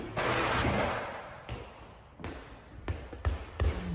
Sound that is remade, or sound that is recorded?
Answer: recorded